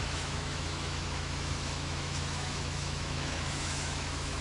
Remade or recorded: remade